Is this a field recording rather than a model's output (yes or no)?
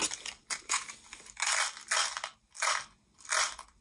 yes